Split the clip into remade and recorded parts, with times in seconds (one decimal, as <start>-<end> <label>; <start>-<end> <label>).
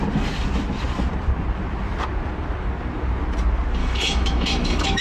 0.0-3.8 recorded; 3.8-5.0 remade